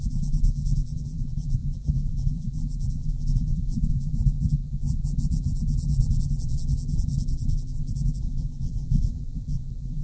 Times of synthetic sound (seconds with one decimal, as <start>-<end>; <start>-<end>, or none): 0.0-10.0